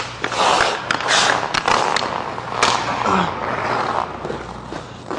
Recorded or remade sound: recorded